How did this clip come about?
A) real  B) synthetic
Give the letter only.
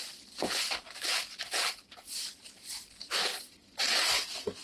A